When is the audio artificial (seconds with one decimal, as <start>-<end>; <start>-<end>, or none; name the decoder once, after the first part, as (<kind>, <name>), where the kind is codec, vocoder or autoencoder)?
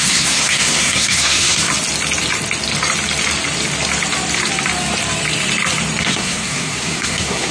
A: 0.0-1.7 (codec, SNAC); 6.0-7.5